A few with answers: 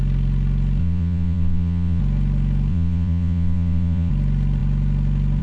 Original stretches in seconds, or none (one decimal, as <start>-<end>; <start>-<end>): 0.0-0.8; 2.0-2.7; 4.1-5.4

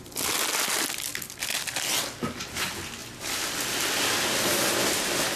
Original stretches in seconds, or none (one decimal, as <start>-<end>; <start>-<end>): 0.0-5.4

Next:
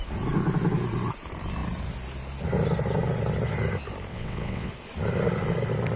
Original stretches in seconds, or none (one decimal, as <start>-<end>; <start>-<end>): 0.0-4.1; 4.7-6.0

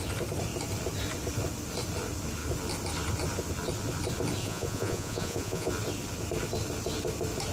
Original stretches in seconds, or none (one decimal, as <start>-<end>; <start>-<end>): 0.0-4.4; 5.7-7.5